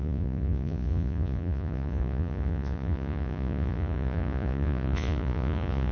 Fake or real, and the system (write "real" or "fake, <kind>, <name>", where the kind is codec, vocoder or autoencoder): fake, vocoder, Vocos